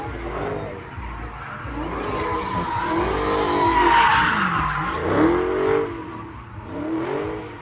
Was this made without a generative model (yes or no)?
yes